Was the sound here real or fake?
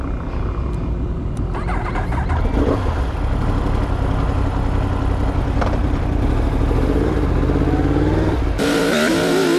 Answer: real